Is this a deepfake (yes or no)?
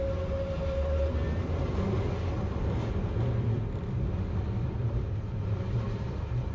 no